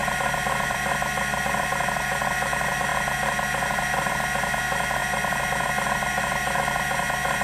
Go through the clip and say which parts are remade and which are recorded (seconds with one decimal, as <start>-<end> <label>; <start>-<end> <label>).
0.0-2.2 remade; 2.2-7.4 recorded

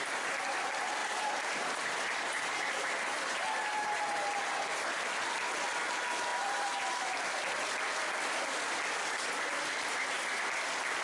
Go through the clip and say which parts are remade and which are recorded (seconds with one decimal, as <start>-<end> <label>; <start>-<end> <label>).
0.0-1.0 recorded; 1.0-4.0 remade; 4.0-6.3 recorded; 6.3-7.2 remade; 7.2-11.0 recorded

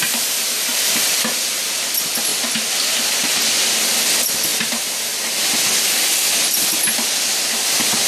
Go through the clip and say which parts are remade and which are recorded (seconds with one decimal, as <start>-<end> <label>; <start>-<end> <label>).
0.0-0.7 recorded; 0.7-1.5 remade; 1.5-2.3 recorded; 2.3-3.2 remade; 3.2-8.1 recorded

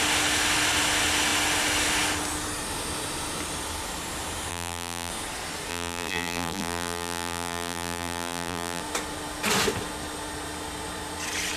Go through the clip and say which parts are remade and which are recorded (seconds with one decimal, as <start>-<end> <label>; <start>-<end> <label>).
0.0-4.5 recorded; 4.5-5.1 remade; 5.1-5.7 recorded; 5.7-8.8 remade; 8.8-11.6 recorded